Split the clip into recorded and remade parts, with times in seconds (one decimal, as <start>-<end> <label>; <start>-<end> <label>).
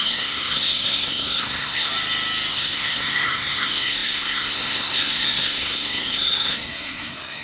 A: 0.0-1.9 remade; 1.9-2.5 recorded; 2.5-7.4 remade